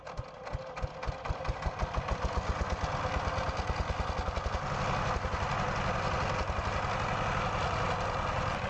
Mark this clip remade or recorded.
recorded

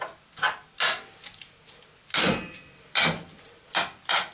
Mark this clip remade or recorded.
recorded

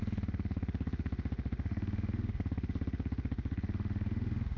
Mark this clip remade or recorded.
remade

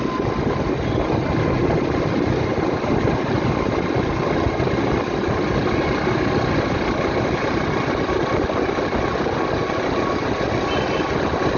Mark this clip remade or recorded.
recorded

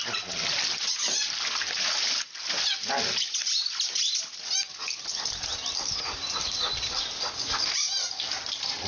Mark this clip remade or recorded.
recorded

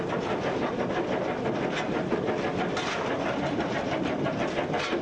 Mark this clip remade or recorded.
recorded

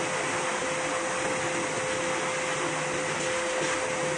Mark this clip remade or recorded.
recorded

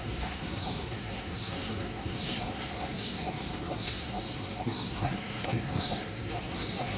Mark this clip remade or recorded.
remade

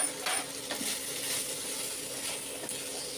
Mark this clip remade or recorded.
recorded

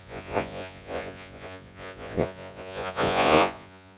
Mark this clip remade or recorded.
remade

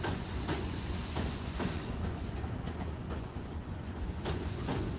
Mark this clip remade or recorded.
remade